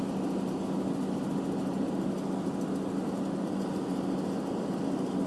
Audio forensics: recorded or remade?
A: recorded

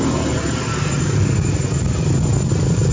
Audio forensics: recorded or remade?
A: recorded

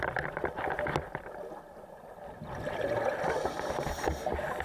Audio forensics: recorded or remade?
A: recorded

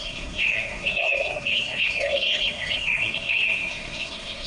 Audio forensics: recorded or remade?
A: remade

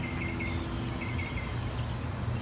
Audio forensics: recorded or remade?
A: recorded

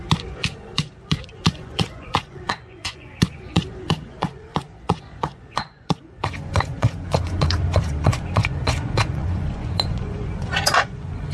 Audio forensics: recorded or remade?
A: remade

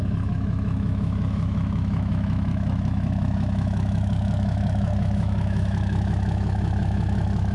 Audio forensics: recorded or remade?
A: remade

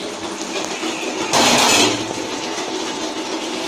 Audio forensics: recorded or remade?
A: recorded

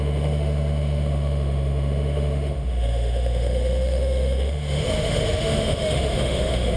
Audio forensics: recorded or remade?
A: remade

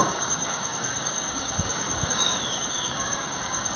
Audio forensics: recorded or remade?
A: remade